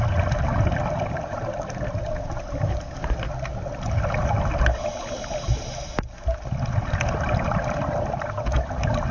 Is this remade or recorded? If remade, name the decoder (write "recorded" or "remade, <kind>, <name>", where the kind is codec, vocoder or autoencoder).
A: recorded